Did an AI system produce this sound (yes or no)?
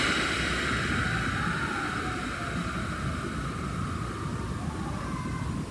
no